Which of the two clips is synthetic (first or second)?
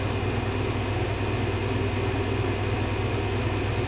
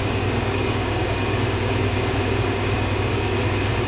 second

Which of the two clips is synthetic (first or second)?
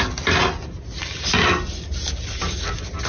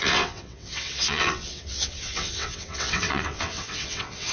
second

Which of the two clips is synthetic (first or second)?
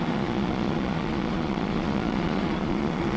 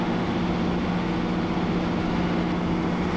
first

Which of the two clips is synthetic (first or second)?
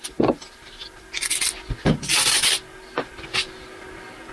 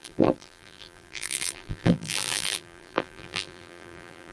second